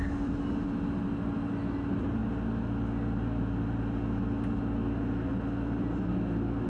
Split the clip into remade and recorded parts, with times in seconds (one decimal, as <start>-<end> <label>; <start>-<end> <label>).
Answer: 0.0-6.7 recorded